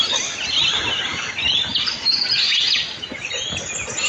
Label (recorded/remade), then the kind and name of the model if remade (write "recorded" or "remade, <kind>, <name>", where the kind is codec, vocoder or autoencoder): recorded